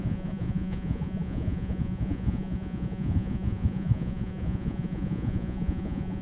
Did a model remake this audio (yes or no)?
yes